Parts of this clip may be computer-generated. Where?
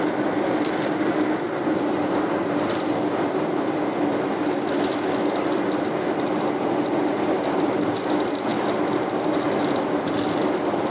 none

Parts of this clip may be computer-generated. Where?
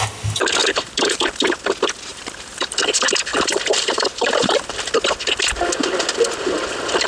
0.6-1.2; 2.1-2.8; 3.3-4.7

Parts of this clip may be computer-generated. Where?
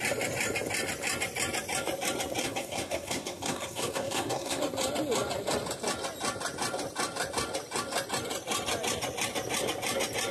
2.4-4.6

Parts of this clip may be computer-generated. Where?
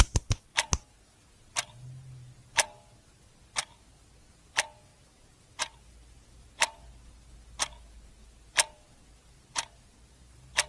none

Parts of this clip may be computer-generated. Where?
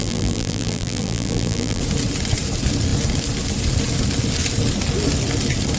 0.0-1.8